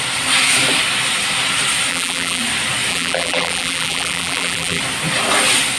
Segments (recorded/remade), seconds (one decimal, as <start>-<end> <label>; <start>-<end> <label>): 0.0-1.9 recorded; 1.9-2.4 remade; 2.4-2.9 recorded; 2.9-4.8 remade; 4.8-5.8 recorded

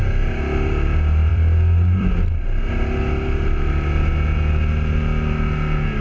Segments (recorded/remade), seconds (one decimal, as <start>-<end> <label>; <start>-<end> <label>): 0.0-1.3 recorded; 1.3-2.1 remade; 2.1-6.0 recorded

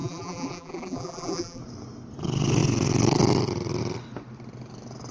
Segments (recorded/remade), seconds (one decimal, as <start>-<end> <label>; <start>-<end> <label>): 0.0-1.6 remade; 1.6-5.1 recorded

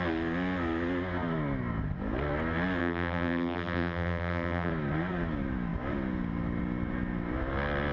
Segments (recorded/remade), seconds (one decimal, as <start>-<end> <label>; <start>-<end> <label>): 0.0-2.8 recorded; 2.8-4.7 remade; 4.7-7.9 recorded

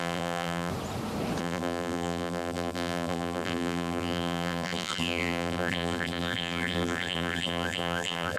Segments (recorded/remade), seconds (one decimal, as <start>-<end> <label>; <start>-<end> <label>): 0.0-0.7 remade; 0.7-1.4 recorded; 1.4-8.4 remade